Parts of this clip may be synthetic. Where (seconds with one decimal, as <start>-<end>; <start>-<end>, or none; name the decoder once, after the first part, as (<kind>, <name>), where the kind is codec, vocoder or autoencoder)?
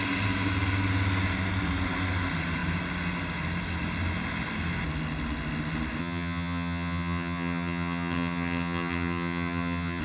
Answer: 6.0-10.0 (vocoder, HiFi-GAN)